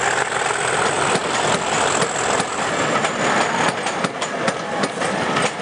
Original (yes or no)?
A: yes